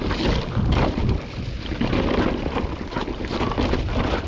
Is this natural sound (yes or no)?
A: yes